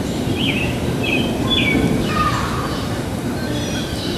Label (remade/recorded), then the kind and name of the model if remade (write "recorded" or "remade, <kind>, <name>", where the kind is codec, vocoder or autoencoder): remade, vocoder, BigVGAN v2